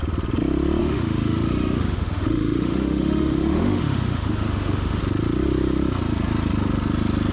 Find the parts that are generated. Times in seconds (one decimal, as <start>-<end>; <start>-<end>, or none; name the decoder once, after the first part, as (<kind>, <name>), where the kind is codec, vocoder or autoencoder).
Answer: 0.8-5.0 (autoencoder, DAC-VAE)